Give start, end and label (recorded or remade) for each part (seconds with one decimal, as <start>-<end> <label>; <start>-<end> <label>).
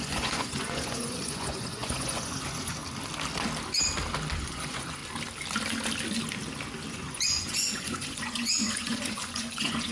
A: 0.0-2.8 remade; 2.8-4.4 recorded; 4.4-5.0 remade; 5.0-6.9 recorded; 6.9-9.9 remade